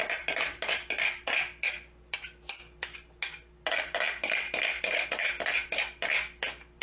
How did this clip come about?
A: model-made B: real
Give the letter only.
B